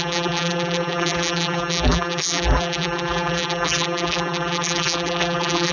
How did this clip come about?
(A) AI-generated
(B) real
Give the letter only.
A